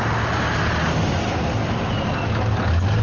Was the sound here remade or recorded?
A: recorded